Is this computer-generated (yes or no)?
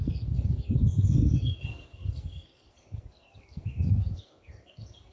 yes